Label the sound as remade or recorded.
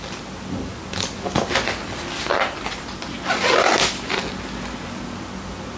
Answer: recorded